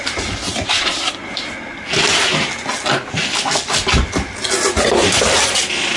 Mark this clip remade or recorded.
recorded